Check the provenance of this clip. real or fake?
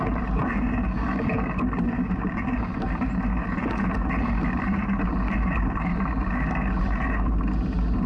real